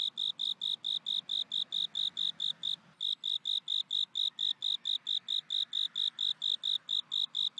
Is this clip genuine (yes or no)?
yes